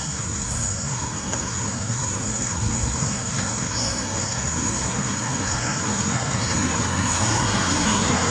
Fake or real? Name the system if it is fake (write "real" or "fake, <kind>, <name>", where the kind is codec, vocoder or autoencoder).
fake, codec, SNAC